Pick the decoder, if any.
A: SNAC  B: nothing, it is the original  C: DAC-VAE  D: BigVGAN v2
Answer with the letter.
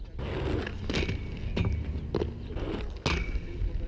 B